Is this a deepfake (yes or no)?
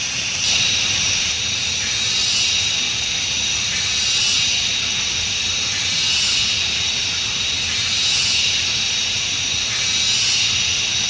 no